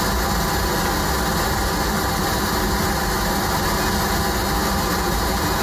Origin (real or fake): real